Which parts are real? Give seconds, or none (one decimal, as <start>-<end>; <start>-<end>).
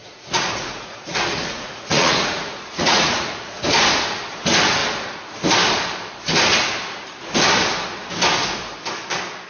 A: 3.3-9.5